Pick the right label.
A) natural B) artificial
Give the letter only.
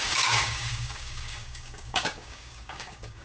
B